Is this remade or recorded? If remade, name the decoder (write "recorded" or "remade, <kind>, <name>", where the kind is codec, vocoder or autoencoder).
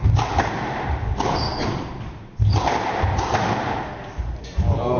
recorded